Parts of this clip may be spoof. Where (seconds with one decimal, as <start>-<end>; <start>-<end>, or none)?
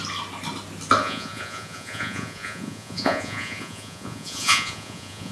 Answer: 1.0-5.3